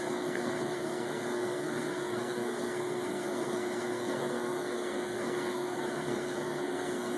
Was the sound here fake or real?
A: fake